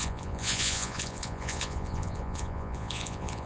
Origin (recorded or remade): remade